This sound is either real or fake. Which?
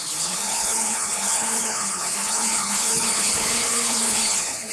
fake